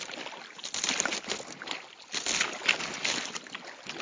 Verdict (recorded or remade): recorded